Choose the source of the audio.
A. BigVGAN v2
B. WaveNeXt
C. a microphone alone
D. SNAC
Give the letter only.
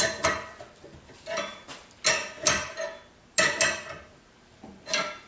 C